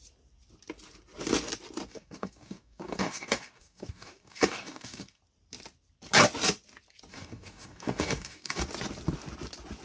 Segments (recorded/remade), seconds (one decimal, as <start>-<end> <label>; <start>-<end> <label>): 0.0-1.9 recorded; 1.9-5.2 remade; 5.2-7.1 recorded; 7.1-8.6 remade; 8.6-9.8 recorded